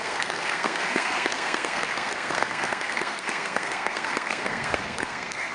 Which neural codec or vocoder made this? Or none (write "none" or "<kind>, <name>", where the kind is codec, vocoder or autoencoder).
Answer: codec, SNAC